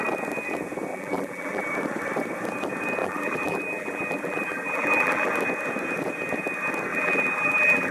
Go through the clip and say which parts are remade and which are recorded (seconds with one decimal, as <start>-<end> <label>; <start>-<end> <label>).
0.0-0.9 recorded; 0.9-1.7 remade; 1.7-3.0 recorded; 3.0-5.3 remade; 5.3-6.9 recorded; 6.9-7.9 remade